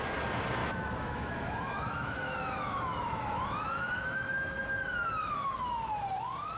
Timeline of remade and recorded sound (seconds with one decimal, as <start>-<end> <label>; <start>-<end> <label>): 0.0-0.6 recorded; 0.6-4.6 remade; 4.6-5.2 recorded; 5.2-6.0 remade; 6.0-6.6 recorded